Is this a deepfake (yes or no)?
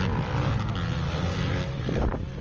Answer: no